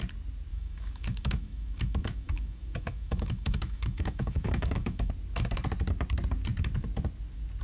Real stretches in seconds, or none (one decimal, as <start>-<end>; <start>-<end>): 0.0-0.5; 5.1-7.6